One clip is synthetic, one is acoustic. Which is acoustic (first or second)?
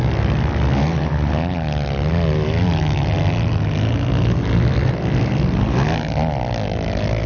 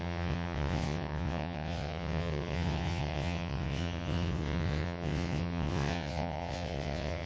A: first